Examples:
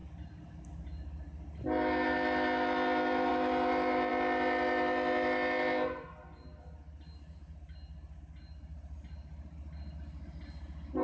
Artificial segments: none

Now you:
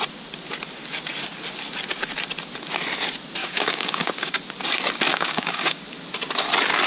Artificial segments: 3.4-4.4 (codec, DAC); 5.1-5.8

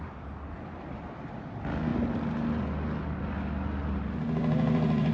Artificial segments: none

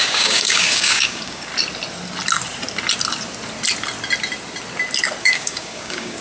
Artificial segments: 0.0-1.5 (codec, DAC); 5.2-6.2